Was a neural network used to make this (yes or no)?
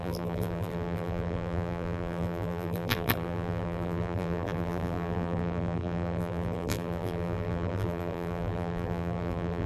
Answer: yes